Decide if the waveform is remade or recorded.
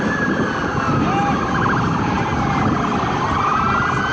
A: recorded